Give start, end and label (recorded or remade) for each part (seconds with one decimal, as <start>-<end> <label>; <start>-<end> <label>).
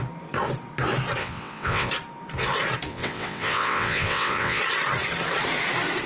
0.0-1.2 recorded; 1.2-1.9 remade; 1.9-2.9 recorded; 2.9-4.6 remade; 4.6-6.1 recorded